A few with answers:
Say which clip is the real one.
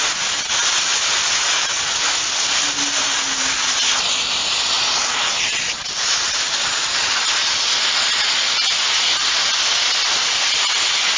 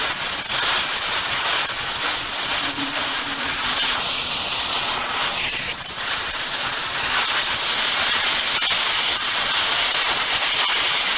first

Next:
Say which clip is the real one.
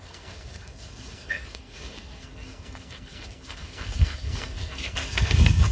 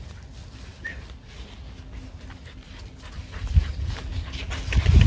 second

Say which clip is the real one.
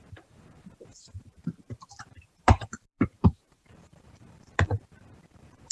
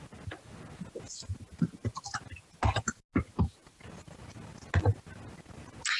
second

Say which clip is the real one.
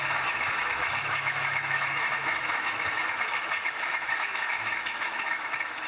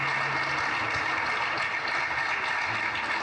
second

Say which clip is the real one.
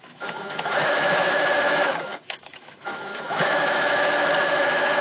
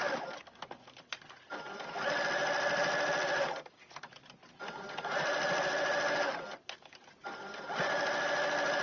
second